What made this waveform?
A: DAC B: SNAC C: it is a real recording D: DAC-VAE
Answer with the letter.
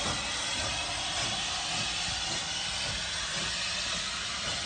C